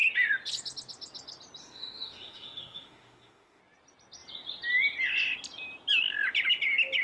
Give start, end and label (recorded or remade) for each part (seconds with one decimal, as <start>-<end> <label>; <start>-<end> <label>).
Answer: 0.0-1.6 recorded; 1.6-3.6 remade; 3.6-7.0 recorded